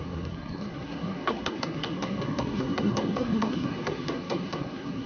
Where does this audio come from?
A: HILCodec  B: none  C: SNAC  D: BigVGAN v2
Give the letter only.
C